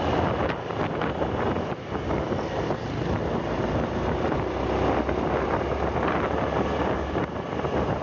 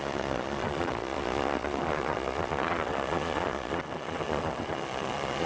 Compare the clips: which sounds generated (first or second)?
second